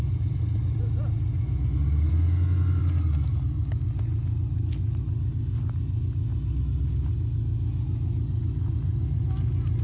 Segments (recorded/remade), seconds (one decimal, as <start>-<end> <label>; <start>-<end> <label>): 0.0-9.8 recorded